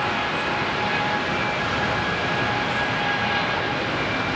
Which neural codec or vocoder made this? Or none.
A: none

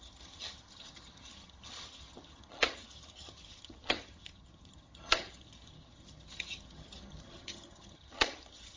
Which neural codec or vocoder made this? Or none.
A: vocoder, HiFi-GAN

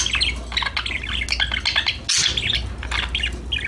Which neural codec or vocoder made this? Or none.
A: none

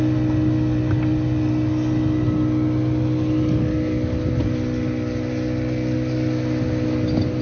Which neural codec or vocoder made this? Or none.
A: none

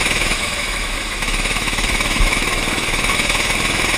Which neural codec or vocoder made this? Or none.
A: autoencoder, DAC-VAE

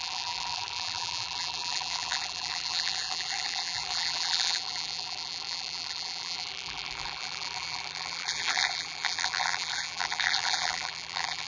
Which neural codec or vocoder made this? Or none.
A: vocoder, BigVGAN v2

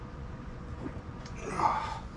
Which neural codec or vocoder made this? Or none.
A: vocoder, Vocos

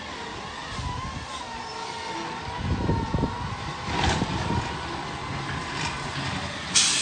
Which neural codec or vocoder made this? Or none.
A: none